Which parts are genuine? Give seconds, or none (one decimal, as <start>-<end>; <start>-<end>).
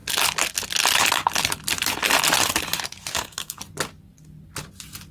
0.0-3.1; 3.6-5.1